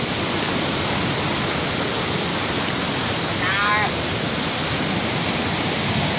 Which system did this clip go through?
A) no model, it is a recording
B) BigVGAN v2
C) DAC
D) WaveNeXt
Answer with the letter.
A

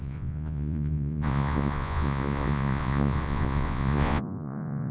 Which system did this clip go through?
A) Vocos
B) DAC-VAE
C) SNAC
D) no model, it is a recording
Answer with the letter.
A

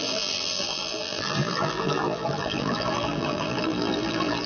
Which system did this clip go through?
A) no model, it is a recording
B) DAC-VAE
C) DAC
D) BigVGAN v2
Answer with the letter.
D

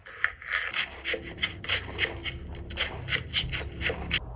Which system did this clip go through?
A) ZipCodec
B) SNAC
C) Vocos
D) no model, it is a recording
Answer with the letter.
D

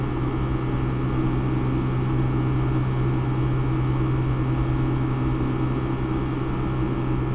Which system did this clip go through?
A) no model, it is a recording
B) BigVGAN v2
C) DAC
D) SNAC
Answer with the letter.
A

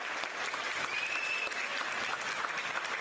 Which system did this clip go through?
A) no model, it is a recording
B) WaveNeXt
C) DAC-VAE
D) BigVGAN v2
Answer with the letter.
A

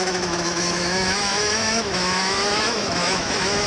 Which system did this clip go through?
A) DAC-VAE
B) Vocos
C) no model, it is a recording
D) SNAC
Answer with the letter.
A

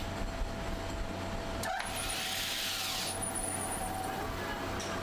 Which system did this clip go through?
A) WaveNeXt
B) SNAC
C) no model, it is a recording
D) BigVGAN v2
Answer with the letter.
C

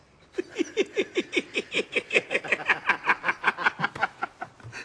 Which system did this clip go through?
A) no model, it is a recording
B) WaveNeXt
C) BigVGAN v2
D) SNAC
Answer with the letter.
A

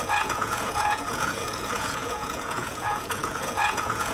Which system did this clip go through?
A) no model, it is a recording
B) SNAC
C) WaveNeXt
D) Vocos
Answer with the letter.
D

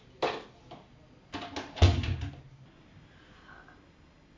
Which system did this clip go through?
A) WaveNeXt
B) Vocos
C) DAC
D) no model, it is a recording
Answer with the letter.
D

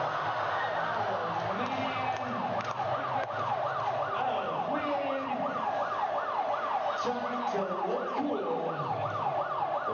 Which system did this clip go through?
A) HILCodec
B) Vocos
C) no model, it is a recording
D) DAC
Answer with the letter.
C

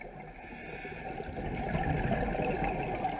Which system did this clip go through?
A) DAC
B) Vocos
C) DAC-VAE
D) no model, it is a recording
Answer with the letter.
D